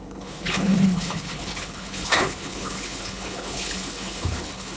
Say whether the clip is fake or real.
fake